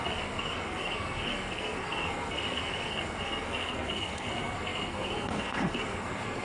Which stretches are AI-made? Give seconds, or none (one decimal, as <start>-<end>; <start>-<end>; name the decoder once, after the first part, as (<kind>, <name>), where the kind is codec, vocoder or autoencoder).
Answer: 0.0-6.4 (codec, SNAC)